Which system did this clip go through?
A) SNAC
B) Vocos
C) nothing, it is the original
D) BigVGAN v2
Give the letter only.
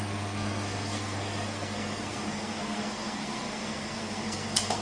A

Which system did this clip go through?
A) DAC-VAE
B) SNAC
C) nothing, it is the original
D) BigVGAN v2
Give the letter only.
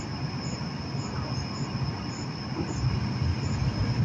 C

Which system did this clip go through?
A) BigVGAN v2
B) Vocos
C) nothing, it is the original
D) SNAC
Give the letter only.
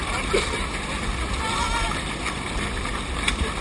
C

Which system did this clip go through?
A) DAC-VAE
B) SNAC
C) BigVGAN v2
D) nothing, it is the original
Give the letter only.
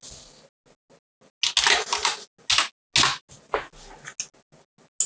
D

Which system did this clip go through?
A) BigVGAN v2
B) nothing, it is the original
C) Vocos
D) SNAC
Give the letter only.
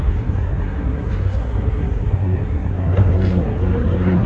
D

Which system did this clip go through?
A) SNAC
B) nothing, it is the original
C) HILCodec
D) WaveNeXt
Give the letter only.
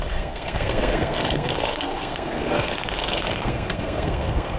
A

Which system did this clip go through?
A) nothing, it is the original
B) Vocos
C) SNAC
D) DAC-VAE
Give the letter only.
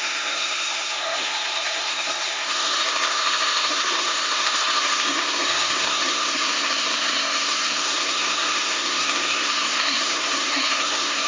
C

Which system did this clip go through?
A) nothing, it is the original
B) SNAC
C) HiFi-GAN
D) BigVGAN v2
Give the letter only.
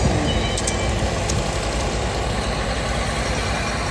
A